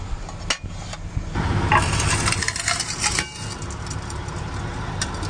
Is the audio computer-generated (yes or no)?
no